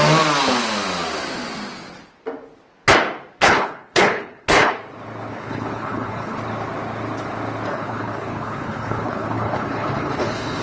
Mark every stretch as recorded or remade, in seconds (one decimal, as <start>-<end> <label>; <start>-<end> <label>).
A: 0.0-3.4 recorded; 3.4-4.7 remade; 4.7-5.3 recorded; 5.3-6.4 remade; 6.4-7.7 recorded; 7.7-10.6 remade